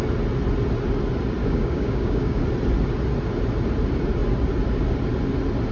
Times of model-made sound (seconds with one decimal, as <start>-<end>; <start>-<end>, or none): 1.4-2.4